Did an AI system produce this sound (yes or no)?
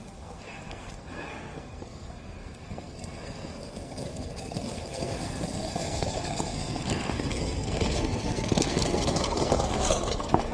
yes